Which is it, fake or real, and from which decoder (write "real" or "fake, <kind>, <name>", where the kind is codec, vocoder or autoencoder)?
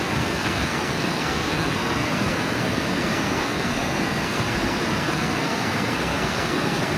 fake, codec, SNAC